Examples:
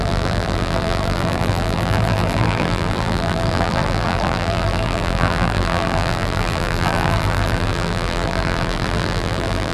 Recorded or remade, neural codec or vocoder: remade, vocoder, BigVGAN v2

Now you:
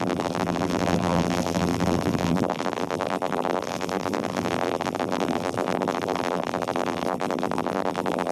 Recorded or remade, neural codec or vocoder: remade, vocoder, BigVGAN v2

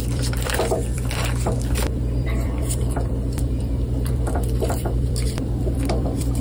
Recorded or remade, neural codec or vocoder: remade, vocoder, BigVGAN v2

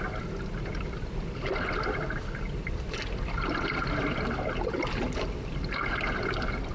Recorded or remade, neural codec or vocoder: recorded